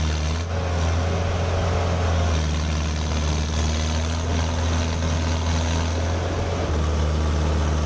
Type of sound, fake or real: real